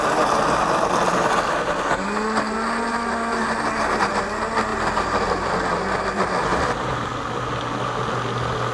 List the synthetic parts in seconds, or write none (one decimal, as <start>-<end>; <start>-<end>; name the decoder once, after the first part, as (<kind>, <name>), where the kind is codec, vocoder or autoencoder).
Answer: 4.7-5.5 (vocoder, BigVGAN v2); 6.5-7.1

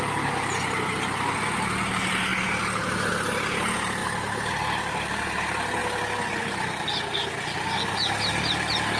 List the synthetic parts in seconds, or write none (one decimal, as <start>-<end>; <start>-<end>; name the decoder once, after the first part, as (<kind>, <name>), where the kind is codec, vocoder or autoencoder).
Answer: none

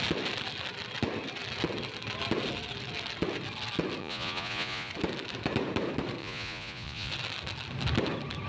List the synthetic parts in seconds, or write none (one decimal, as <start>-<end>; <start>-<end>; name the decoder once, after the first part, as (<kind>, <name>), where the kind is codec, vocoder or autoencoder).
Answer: 4.0-4.9 (vocoder, Vocos); 6.2-7.1

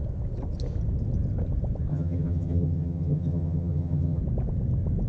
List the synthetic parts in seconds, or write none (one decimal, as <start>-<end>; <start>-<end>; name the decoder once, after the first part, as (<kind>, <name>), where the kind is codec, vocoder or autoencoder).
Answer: 1.9-4.2 (vocoder, HiFi-GAN)

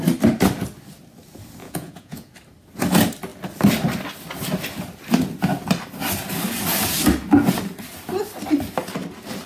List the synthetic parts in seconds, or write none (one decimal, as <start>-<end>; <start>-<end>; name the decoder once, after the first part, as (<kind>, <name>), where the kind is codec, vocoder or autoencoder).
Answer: 1.6-2.3 (vocoder, Vocos)

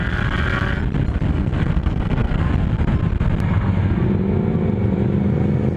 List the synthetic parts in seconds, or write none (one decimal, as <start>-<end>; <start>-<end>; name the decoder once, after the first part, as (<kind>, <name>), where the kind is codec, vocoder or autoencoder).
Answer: 1.3-2.5 (codec, SNAC)